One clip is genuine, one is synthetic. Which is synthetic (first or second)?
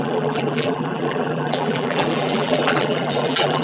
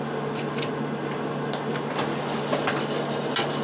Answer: first